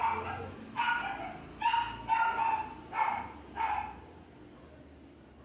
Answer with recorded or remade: recorded